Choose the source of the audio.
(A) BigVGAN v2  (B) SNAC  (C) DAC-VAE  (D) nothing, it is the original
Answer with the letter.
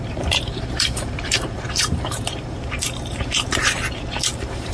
A